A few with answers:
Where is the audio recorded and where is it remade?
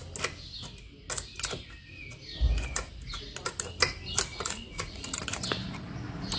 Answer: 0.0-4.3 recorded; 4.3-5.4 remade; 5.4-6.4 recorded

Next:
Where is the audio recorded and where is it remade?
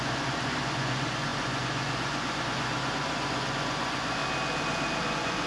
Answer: 0.0-4.2 remade; 4.2-5.1 recorded; 5.1-5.5 remade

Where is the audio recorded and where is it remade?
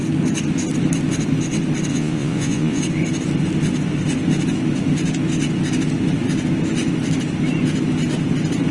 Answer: 0.0-1.9 recorded; 1.9-2.8 remade; 2.8-8.7 recorded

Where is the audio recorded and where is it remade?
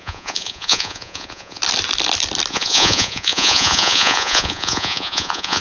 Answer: 0.0-1.6 remade; 1.6-2.5 recorded; 2.5-5.6 remade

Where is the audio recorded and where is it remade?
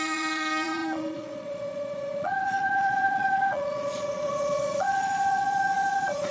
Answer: 0.0-6.3 remade